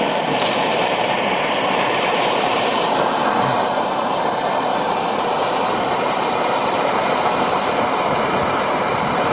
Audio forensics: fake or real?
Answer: fake